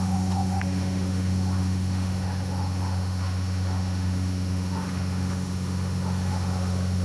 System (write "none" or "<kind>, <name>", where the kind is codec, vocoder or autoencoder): autoencoder, DAC-VAE